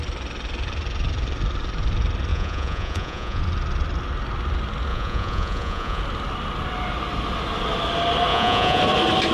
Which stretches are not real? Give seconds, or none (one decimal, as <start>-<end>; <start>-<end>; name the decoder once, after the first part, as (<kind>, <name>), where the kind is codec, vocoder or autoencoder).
2.3-3.4 (vocoder, Vocos); 4.9-6.0; 8.3-8.8